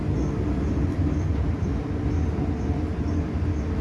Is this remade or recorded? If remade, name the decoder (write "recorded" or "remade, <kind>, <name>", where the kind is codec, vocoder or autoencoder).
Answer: recorded